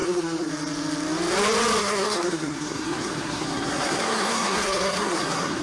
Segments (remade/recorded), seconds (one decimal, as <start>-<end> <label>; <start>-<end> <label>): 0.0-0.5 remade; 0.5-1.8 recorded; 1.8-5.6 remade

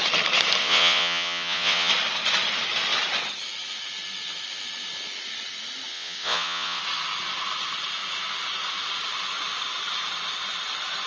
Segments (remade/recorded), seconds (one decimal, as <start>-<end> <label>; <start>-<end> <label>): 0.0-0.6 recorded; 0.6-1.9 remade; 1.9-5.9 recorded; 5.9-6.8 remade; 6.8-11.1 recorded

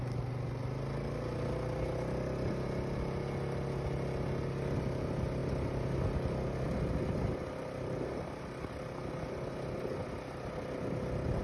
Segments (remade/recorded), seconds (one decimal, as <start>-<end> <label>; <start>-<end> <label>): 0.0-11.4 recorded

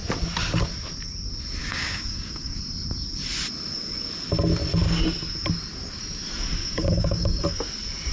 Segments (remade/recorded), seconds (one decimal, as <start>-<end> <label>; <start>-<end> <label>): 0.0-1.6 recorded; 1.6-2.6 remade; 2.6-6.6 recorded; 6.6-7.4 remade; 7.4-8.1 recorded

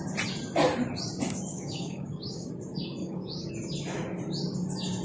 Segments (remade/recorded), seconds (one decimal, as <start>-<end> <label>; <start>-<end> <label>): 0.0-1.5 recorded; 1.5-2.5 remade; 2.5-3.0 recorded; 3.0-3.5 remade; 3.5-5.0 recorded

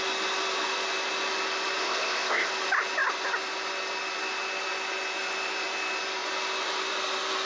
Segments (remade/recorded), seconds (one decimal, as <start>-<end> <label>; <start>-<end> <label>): 0.0-1.8 recorded; 1.8-2.5 remade; 2.5-7.5 recorded